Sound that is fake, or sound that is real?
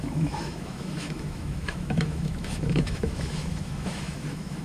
fake